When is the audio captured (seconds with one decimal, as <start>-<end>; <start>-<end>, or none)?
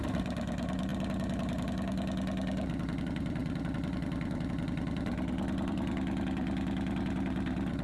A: 0.9-3.0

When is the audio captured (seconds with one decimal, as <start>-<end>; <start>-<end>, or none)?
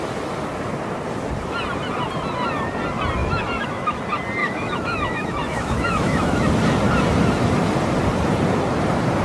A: 0.0-3.2; 4.0-4.4; 6.5-9.2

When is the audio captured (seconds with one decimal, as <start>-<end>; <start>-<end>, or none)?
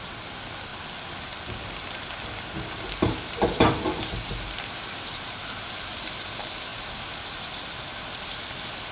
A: 0.0-8.9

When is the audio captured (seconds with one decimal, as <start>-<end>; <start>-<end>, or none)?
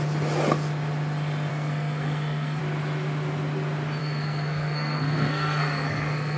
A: 0.0-1.5; 2.6-4.0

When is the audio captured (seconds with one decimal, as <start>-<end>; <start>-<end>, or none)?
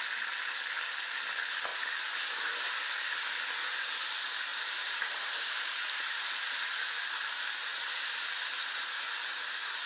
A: 0.0-1.7; 2.2-4.5; 6.2-9.9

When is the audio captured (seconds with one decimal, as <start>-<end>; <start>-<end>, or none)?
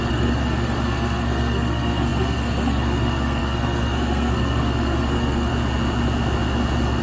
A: 5.5-7.0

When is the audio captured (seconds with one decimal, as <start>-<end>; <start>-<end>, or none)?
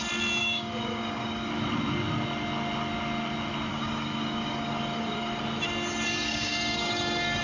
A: 0.0-0.4; 1.5-3.7; 5.4-6.1